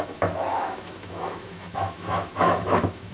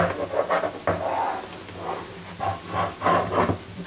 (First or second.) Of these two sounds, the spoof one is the first